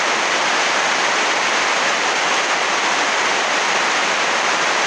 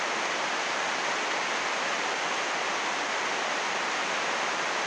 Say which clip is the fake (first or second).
first